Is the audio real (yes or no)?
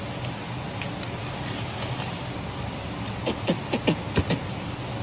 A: yes